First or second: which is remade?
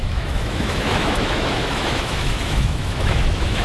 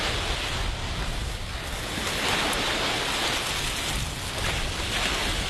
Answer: first